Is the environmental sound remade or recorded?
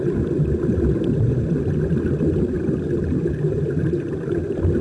recorded